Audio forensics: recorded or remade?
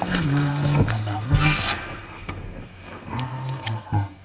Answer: remade